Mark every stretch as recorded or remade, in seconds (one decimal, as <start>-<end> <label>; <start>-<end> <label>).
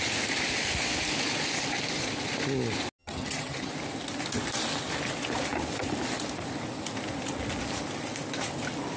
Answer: 0.0-3.0 recorded; 3.0-3.7 remade; 3.7-9.0 recorded